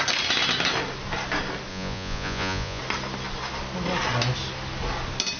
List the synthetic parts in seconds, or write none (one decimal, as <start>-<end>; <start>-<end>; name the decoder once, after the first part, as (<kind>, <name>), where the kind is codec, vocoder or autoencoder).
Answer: 1.7-2.8 (vocoder, Vocos)